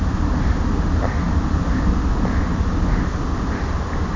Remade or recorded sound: recorded